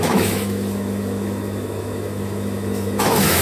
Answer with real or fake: fake